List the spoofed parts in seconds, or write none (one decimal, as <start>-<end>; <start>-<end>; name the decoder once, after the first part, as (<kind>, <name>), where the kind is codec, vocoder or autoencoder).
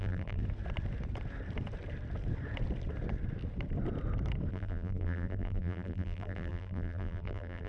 0.0-0.4 (vocoder, BigVGAN v2); 4.5-7.7